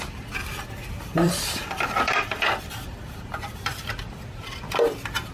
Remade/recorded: remade